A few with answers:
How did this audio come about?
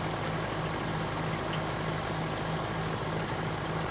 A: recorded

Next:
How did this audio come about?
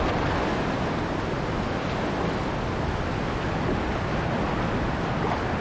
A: recorded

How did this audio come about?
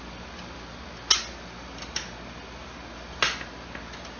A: recorded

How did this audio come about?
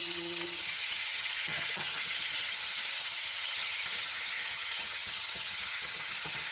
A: remade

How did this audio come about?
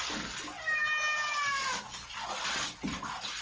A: recorded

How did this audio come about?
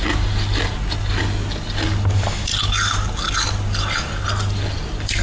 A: recorded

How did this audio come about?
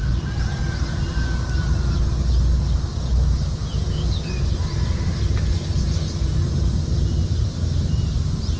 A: recorded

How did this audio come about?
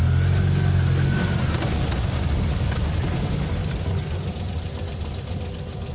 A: recorded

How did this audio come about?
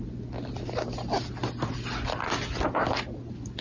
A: recorded